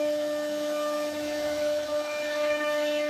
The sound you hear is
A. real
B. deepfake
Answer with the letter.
B